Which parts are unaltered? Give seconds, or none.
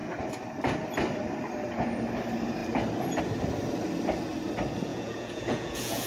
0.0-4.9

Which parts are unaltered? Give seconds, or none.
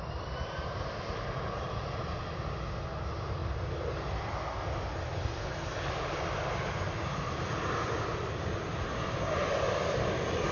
0.0-10.5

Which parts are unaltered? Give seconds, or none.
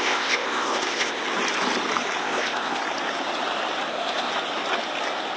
1.2-2.2; 2.8-3.9; 4.3-5.4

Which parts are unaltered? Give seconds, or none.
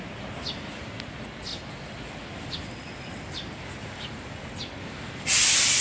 0.0-3.8; 4.5-5.8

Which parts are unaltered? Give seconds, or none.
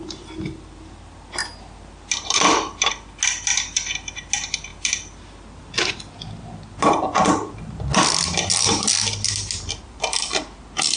0.0-11.0